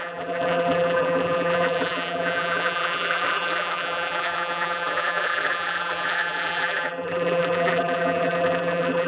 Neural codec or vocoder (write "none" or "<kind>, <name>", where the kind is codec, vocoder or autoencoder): vocoder, BigVGAN v2